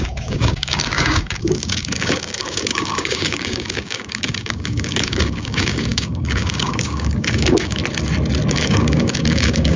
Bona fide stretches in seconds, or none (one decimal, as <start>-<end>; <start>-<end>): 7.8-8.5